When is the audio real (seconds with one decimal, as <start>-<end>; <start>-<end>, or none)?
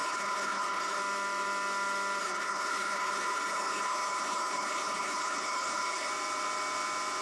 1.0-2.2; 6.1-7.2